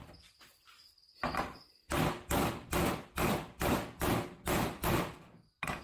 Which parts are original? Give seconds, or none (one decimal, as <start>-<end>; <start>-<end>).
0.0-5.8